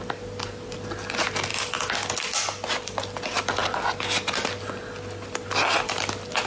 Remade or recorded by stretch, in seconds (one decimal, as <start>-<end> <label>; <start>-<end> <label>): 0.0-6.5 recorded